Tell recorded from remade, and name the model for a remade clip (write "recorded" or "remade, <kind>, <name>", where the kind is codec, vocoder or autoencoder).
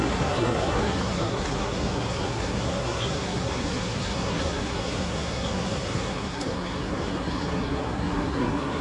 remade, codec, SNAC